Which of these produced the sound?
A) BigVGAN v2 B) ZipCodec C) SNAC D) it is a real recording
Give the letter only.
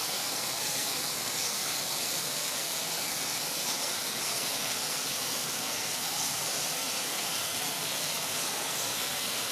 C